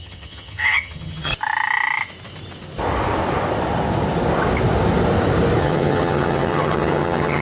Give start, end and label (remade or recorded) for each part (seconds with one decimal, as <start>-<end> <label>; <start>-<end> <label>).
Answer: 0.0-1.3 remade; 1.3-5.6 recorded; 5.6-7.4 remade